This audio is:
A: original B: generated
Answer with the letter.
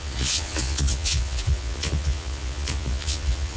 B